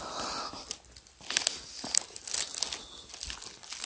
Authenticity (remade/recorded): recorded